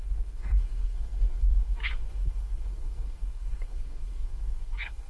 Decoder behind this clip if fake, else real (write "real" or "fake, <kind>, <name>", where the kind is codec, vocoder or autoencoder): fake, codec, SNAC